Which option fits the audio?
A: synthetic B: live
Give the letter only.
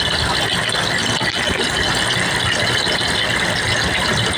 B